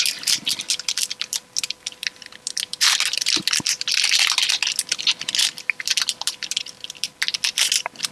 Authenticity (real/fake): real